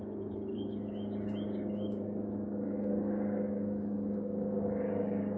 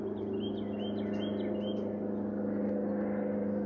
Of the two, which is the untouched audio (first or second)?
second